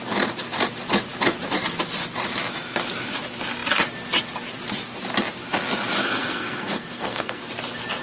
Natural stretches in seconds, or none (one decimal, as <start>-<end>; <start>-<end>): 0.0-6.0; 7.4-8.0